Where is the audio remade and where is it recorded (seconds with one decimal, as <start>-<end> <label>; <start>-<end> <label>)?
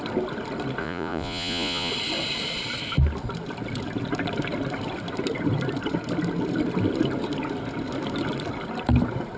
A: 0.0-0.8 recorded; 0.8-1.9 remade; 1.9-9.4 recorded